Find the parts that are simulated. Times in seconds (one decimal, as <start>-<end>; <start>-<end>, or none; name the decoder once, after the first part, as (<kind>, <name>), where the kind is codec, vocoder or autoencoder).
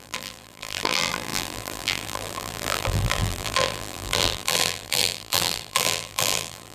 0.0-6.7 (vocoder, BigVGAN v2)